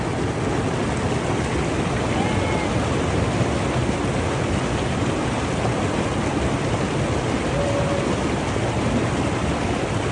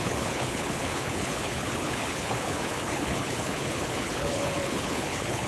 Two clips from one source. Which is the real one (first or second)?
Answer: first